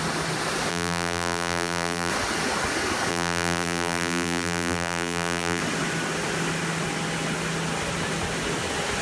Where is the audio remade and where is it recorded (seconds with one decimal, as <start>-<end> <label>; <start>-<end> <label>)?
0.0-0.7 recorded; 0.7-2.1 remade; 2.1-3.1 recorded; 3.1-5.6 remade; 5.6-9.0 recorded